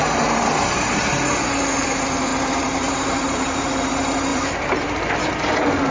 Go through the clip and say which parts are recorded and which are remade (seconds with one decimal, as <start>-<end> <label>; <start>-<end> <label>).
0.0-1.0 remade; 1.0-2.3 recorded; 2.3-3.7 remade; 3.7-4.3 recorded; 4.3-5.3 remade; 5.3-5.9 recorded